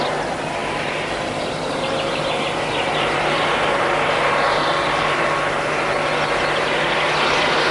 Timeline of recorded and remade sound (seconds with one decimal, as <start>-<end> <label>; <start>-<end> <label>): 0.0-7.7 recorded